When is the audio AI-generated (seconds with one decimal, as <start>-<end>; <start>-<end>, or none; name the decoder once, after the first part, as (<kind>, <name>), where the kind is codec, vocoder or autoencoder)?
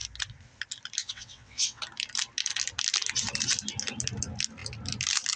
1.0-1.8 (vocoder, WaveNeXt)